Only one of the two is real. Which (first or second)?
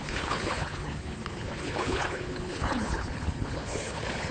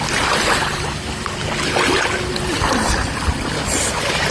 second